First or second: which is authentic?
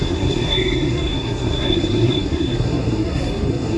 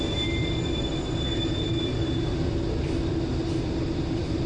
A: second